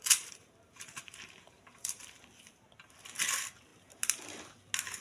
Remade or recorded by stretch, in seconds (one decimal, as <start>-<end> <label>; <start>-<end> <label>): 0.0-2.2 remade; 2.2-5.0 recorded